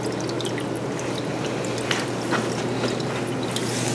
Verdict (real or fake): real